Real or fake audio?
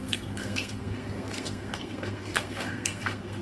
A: fake